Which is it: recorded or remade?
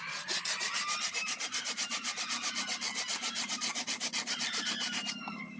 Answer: recorded